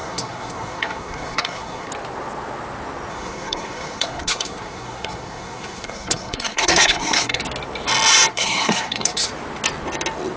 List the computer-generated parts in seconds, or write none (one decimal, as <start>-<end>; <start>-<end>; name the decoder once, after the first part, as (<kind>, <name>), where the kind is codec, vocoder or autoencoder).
0.0-1.9 (codec, SNAC); 3.1-7.4; 8.3-9.3